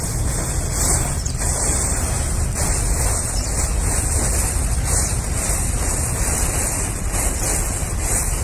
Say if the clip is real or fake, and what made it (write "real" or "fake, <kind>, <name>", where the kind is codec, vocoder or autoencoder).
real